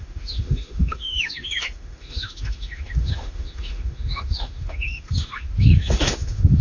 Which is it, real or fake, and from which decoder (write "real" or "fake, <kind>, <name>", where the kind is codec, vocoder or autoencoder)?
fake, autoencoder, DAC-VAE